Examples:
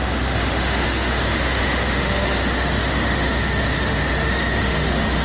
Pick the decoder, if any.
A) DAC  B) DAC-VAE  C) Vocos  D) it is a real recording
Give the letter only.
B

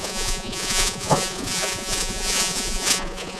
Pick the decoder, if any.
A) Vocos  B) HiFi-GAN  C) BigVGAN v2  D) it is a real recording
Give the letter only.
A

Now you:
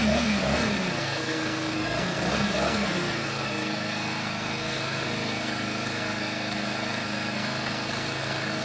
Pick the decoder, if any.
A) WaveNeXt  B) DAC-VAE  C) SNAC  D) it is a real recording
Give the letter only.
C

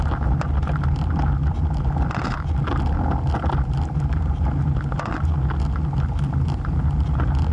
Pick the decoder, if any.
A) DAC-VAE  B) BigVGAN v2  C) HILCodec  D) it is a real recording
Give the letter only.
D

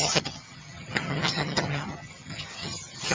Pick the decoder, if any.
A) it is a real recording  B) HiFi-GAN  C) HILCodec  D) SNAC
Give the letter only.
B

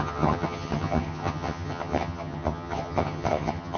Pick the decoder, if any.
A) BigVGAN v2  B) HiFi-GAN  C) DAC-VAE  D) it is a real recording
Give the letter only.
B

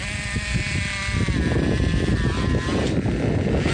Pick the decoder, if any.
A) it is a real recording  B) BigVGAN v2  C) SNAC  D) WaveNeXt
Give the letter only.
A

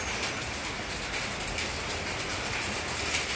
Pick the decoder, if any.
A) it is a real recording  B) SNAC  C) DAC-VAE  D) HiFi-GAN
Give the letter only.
A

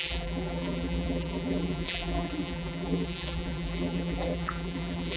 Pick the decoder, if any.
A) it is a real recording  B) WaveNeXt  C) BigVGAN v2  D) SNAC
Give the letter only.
C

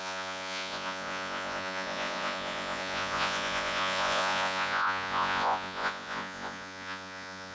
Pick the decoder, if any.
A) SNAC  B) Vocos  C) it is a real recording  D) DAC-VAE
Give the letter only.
B